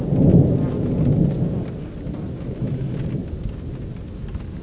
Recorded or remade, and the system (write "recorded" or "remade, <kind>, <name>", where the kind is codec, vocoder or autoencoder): recorded